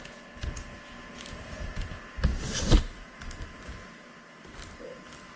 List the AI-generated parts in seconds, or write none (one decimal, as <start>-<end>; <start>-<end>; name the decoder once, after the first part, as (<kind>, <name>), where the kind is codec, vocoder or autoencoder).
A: 1.1-1.7 (vocoder, BigVGAN v2); 2.3-2.8